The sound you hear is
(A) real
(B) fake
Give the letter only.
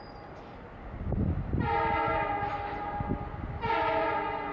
A